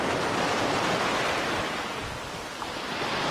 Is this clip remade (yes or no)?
no